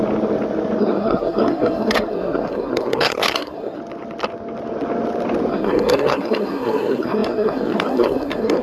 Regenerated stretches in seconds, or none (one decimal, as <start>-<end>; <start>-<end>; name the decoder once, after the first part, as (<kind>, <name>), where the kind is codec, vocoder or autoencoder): 0.8-3.8 (codec, SNAC); 5.5-8.6